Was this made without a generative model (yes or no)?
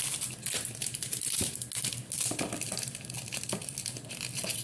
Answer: yes